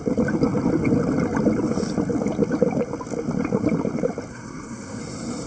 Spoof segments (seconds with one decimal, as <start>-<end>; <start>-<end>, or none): 4.3-5.0